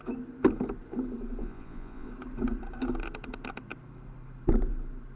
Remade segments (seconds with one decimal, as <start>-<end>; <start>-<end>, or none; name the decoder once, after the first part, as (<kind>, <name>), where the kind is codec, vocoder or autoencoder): 1.4-2.1 (vocoder, Vocos)